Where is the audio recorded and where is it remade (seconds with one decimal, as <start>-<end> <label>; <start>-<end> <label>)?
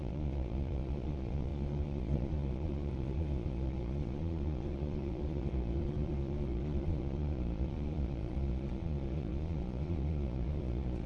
0.0-11.1 remade